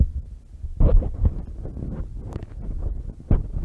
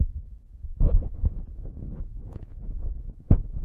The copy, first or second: second